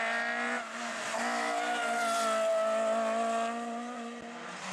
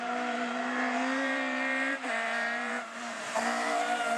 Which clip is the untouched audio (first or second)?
first